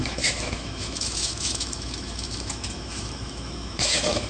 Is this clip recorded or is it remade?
remade